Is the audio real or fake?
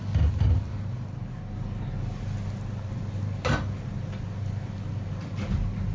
real